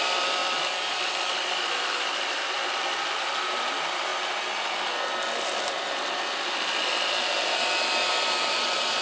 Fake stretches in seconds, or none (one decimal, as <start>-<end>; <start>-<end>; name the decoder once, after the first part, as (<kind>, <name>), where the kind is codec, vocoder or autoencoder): 0.0-4.1 (vocoder, BigVGAN v2); 8.1-9.0